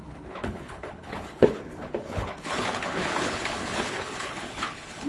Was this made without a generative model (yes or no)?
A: no